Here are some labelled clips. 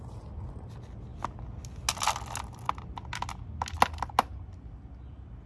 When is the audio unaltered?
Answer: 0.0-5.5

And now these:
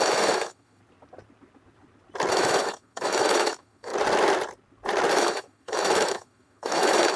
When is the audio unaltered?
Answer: 0.8-2.3; 3.9-5.1